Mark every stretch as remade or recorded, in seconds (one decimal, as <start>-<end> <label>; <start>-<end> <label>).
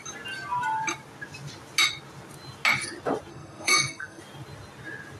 0.0-3.3 recorded; 3.3-4.2 remade; 4.2-5.2 recorded